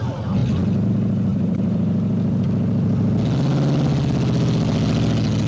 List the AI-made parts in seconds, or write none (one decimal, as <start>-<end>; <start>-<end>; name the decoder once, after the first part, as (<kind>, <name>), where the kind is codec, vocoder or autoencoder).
1.3-2.4 (vocoder, BigVGAN v2)